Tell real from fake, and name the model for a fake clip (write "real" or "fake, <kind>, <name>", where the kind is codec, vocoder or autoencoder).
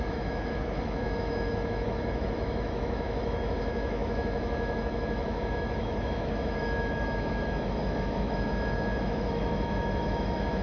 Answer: fake, autoencoder, DAC-VAE